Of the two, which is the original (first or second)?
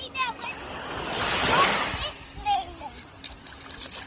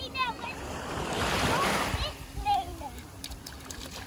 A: first